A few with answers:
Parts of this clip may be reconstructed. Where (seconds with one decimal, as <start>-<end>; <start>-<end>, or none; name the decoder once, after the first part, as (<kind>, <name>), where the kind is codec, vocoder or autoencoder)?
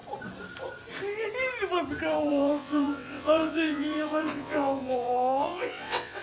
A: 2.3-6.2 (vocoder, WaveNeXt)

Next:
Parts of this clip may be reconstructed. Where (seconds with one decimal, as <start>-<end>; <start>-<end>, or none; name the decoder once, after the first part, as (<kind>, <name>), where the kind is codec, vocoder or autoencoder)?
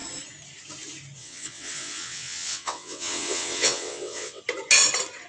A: 1.2-4.4 (vocoder, WaveNeXt)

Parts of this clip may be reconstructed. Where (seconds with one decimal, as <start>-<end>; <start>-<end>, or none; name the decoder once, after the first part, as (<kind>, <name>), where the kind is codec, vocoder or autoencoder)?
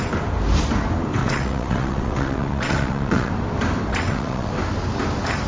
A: 1.2-3.3 (vocoder, WaveNeXt); 3.9-4.5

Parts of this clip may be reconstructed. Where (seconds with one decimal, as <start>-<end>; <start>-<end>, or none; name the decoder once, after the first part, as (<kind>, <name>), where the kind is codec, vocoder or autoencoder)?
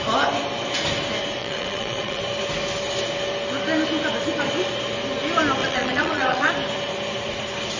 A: 1.4-2.2 (vocoder, WaveNeXt); 5.6-6.5